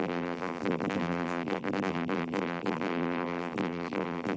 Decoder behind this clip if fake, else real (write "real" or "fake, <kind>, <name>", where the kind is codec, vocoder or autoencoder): fake, vocoder, BigVGAN v2